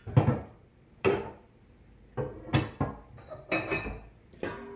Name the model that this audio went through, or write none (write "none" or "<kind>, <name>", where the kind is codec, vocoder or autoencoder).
none